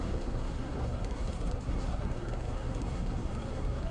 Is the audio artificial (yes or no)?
yes